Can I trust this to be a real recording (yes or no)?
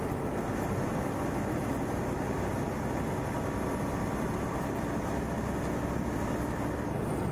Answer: yes